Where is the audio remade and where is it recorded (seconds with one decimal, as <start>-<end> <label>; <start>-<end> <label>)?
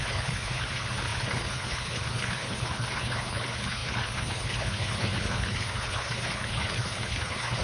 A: 0.0-7.6 remade